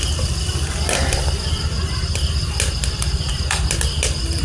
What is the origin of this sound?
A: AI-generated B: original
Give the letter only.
B